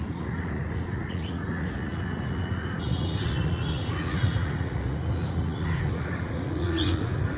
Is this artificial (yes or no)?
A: yes